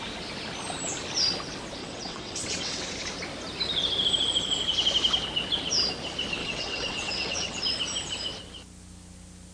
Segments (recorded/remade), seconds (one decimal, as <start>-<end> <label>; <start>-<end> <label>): 0.0-1.8 recorded; 1.8-2.8 remade; 2.8-6.4 recorded; 6.4-7.6 remade; 7.6-9.5 recorded